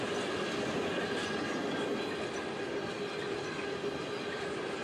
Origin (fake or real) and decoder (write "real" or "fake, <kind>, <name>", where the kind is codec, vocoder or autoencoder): real